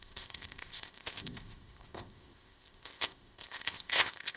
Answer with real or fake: fake